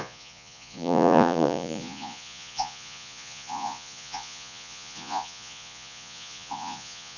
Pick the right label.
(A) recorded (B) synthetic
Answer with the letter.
B